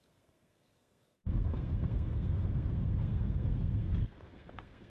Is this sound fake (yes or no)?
yes